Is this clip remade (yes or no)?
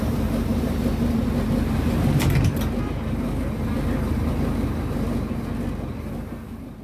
no